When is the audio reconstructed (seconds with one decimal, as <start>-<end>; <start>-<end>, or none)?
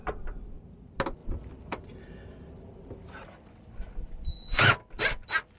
0.0-0.6; 1.2-4.6